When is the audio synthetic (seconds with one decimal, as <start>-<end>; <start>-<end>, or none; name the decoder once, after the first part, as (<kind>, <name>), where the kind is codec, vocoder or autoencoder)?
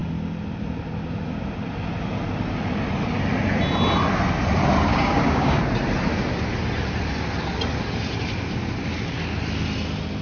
4.9-5.6 (codec, DAC)